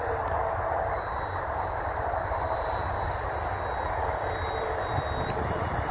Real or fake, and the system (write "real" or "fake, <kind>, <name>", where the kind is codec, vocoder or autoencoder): real